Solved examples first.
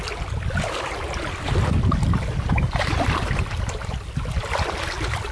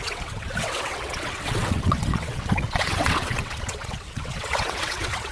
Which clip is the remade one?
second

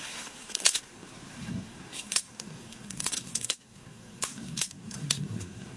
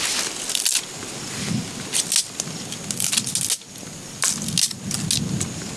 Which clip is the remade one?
first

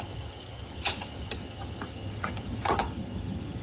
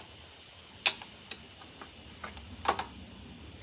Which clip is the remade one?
first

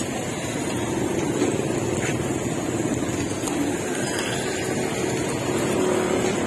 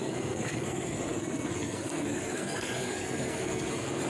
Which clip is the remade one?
second